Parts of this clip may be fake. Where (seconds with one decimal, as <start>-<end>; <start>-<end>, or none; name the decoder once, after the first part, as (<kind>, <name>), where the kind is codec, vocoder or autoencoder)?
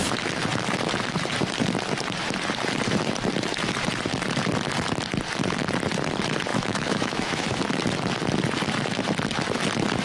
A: 6.5-7.6 (autoencoder, DAC-VAE)